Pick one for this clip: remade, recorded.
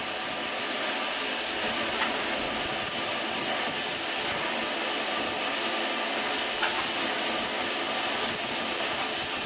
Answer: recorded